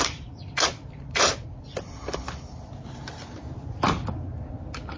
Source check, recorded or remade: remade